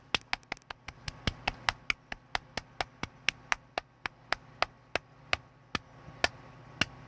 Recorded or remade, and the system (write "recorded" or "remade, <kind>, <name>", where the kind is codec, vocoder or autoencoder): recorded